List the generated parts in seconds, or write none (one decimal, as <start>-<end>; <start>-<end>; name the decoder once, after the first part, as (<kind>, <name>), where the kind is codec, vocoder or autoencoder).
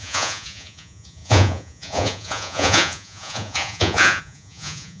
0.0-5.0 (vocoder, Vocos)